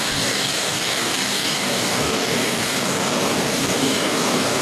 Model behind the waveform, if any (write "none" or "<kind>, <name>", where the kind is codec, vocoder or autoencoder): codec, DAC